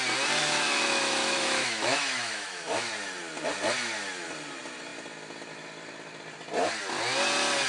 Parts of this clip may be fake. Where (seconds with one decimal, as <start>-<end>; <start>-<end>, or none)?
0.4-2.9